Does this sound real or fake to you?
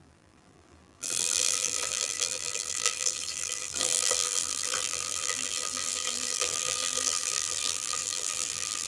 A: fake